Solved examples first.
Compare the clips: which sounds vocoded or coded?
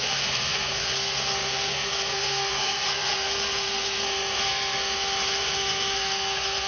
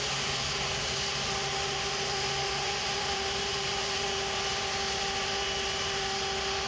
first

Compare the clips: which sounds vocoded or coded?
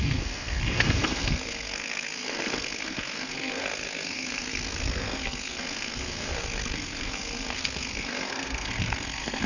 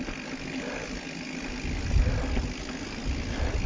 first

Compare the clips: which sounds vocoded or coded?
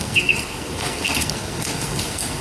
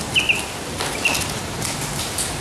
first